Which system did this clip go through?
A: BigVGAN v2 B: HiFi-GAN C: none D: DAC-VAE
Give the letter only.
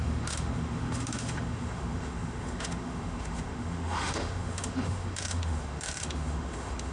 D